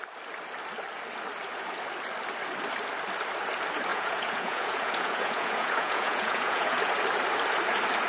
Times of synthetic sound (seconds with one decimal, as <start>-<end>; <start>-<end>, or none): 3.9-6.9